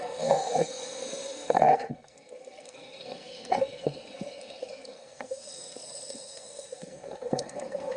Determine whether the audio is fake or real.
fake